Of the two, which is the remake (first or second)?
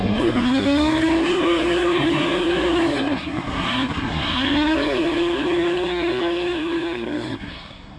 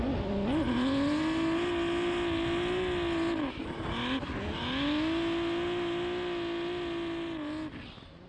first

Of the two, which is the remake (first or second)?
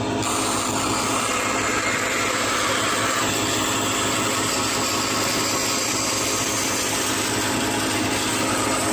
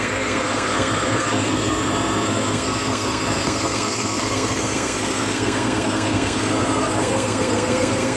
second